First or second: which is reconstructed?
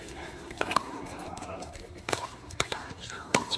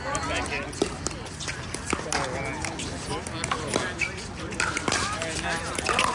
first